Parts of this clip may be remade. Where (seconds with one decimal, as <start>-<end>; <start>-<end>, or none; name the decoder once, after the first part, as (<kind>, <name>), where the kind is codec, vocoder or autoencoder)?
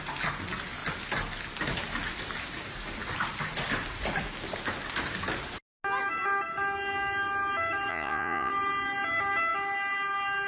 7.9-8.5 (vocoder, Vocos)